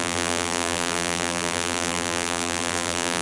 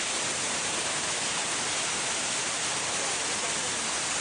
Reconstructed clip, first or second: first